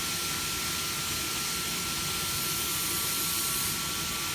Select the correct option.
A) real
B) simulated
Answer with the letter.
A